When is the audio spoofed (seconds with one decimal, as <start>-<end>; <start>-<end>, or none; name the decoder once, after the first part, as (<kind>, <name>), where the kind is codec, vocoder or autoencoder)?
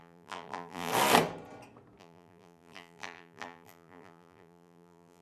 0.0-0.9 (vocoder, BigVGAN v2); 2.0-5.2